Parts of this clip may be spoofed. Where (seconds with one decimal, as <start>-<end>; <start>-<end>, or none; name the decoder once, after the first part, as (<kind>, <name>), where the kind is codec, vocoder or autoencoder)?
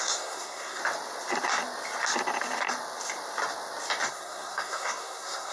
0.0-0.8 (codec, SNAC); 4.1-5.5